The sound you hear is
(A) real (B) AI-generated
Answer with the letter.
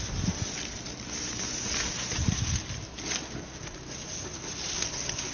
A